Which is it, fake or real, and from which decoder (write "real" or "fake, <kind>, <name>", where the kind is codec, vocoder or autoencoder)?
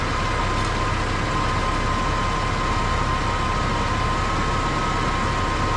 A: real